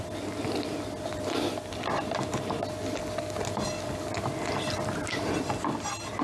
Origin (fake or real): real